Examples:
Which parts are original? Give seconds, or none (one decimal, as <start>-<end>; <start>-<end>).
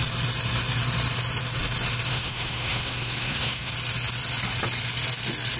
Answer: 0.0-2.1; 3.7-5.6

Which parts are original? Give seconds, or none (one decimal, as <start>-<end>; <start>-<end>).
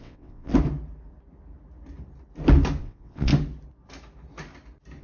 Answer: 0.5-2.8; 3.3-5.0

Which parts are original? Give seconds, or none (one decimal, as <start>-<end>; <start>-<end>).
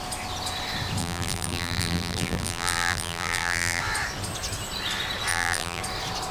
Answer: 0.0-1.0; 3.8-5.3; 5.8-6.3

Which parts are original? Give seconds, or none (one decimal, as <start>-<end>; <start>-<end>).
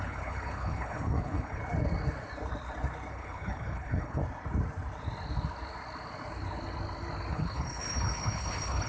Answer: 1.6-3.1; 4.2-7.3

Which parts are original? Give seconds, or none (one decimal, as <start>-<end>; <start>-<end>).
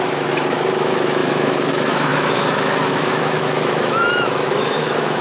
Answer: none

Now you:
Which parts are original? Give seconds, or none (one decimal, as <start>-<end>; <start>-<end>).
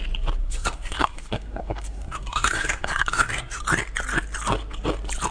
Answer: 0.0-0.4; 3.6-5.3